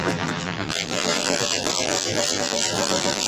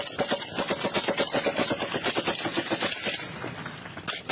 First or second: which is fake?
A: first